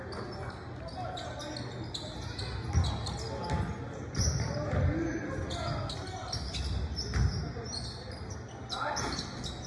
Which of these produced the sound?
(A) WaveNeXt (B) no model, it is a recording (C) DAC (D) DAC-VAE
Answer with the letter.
B